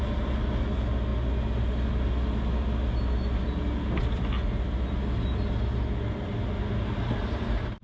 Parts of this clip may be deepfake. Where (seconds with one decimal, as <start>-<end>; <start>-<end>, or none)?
none